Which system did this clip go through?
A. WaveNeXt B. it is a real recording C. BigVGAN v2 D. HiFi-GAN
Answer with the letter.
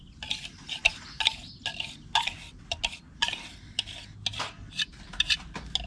B